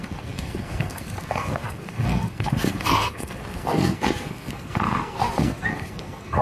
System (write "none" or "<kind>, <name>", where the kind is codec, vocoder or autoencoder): codec, SNAC